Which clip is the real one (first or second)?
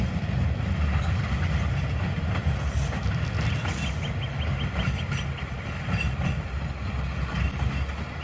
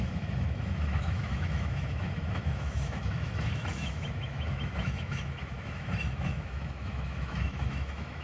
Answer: first